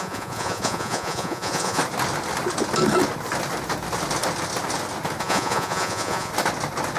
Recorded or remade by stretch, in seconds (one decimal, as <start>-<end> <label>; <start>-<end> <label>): 0.0-1.8 remade; 1.8-5.2 recorded; 5.2-6.3 remade; 6.3-7.0 recorded